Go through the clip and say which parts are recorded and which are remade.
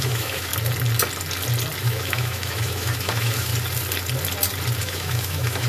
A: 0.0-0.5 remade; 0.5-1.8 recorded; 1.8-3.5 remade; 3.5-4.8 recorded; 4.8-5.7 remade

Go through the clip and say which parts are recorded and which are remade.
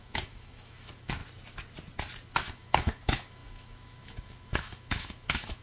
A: 0.0-1.2 remade; 1.2-2.3 recorded; 2.3-5.6 remade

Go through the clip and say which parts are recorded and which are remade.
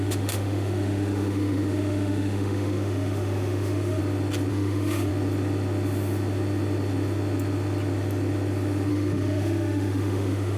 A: 0.0-4.0 remade; 4.0-4.5 recorded; 4.5-5.1 remade; 5.1-8.9 recorded; 8.9-10.6 remade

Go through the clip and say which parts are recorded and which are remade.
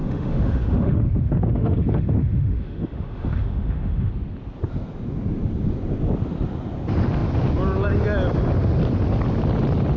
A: 0.0-4.1 remade; 4.1-10.0 recorded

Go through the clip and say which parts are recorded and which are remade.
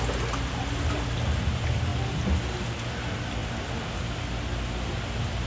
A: 0.0-5.5 recorded